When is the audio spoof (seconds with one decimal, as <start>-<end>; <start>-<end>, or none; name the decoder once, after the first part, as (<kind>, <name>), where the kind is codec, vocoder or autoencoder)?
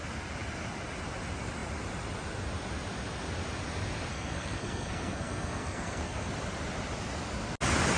4.1-6.3 (codec, SNAC)